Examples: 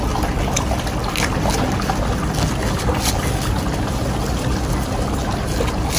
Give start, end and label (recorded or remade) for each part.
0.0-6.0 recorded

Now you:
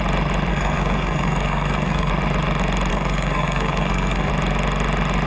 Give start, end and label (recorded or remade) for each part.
0.0-0.5 recorded; 0.5-2.1 remade; 2.1-2.9 recorded; 2.9-4.3 remade; 4.3-5.3 recorded

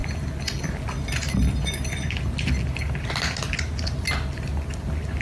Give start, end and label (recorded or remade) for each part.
0.0-5.2 recorded

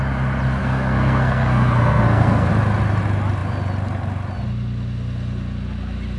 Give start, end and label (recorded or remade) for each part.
0.0-0.6 recorded; 0.6-2.5 remade; 2.5-6.2 recorded